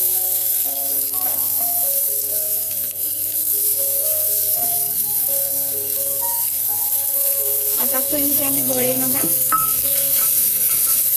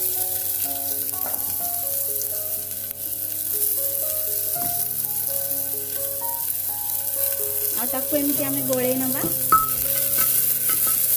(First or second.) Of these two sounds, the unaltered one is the second